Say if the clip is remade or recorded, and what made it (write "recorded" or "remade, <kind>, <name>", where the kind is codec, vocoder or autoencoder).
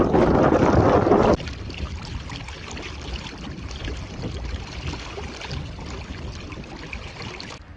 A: recorded